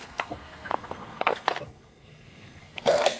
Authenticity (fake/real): fake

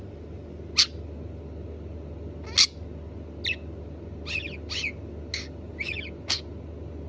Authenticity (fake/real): real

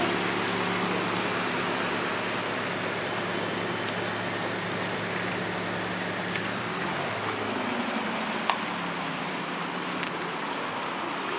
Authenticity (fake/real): real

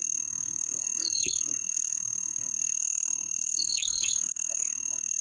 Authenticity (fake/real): fake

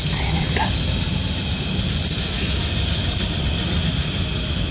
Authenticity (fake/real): real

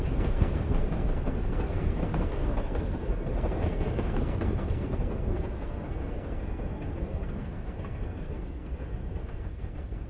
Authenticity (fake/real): fake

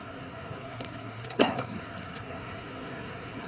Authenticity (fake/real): fake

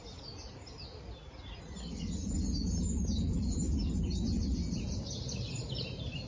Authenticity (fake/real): real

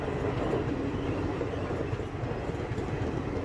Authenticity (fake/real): real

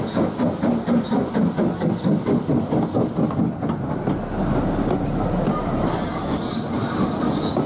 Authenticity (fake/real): real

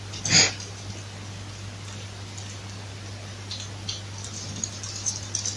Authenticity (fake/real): real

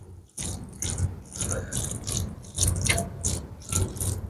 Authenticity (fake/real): real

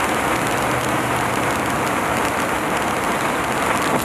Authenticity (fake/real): real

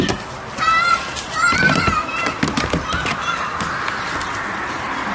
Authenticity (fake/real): real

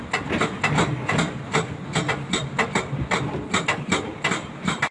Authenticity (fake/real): real